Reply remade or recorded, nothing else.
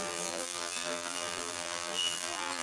remade